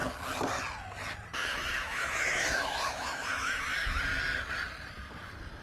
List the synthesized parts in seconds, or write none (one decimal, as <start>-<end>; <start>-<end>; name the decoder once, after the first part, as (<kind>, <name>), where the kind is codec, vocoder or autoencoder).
1.4-4.0 (autoencoder, DAC-VAE)